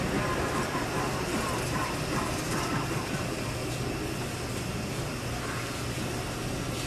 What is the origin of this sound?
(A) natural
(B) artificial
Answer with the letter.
A